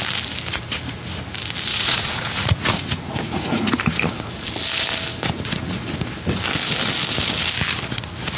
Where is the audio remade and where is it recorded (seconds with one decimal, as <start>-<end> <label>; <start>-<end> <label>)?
0.0-1.7 recorded; 1.7-3.8 remade; 3.8-8.4 recorded